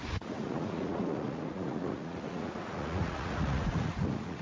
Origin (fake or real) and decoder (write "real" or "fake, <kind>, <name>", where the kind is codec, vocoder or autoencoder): fake, vocoder, Vocos